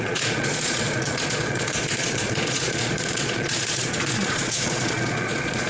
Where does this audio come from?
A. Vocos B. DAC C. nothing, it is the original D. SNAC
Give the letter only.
A